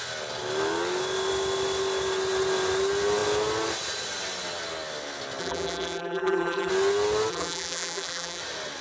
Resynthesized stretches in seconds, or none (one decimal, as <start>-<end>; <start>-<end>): 5.4-6.7; 7.3-8.4